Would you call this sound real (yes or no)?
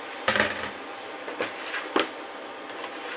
yes